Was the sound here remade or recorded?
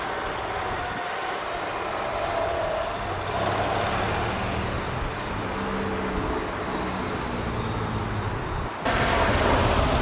recorded